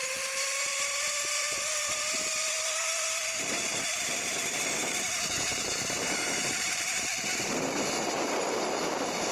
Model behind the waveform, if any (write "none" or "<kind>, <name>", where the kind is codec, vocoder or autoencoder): vocoder, BigVGAN v2